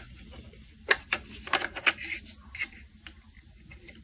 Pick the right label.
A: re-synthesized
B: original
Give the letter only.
B